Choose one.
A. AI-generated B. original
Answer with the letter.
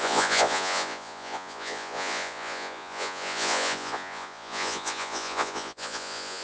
A